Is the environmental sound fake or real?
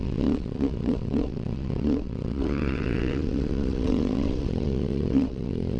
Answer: fake